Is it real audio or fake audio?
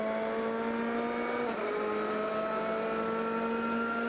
real